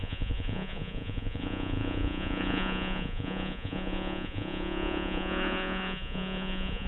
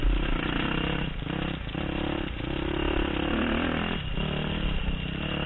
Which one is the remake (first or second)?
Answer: first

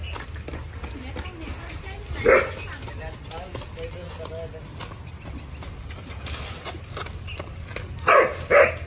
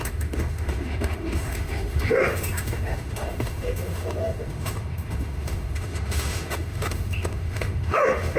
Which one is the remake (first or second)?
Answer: second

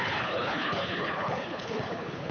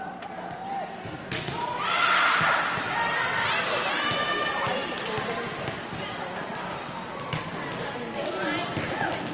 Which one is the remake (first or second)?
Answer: first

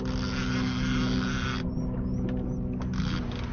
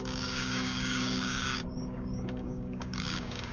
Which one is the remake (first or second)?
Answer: second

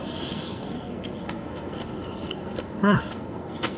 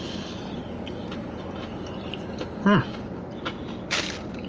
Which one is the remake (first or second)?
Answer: first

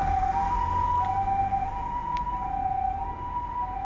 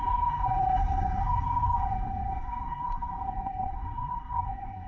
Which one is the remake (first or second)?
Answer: second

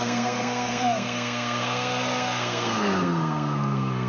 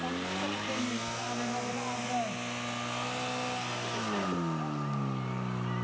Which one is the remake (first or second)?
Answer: first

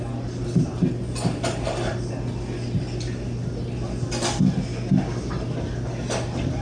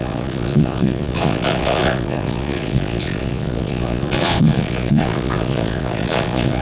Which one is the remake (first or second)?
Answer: second